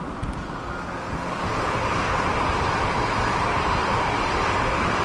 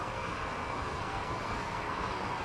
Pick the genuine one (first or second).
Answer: first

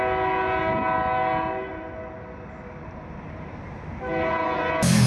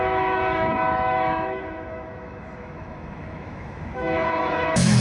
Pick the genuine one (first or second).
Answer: first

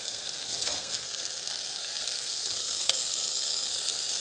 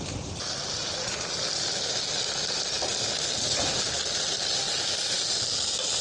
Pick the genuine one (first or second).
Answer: second